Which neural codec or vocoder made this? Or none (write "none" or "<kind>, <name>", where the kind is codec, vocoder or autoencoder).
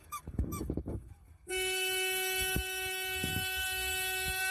codec, DAC